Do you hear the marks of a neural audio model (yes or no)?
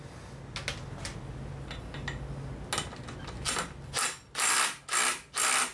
no